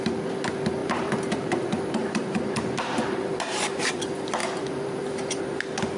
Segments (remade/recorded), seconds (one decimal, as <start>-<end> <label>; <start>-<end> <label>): 0.0-0.8 recorded; 0.8-4.0 remade; 4.0-4.4 recorded; 4.4-5.4 remade; 5.4-6.0 recorded